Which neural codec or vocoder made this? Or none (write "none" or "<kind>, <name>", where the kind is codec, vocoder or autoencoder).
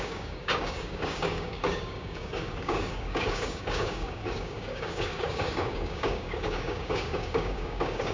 codec, DAC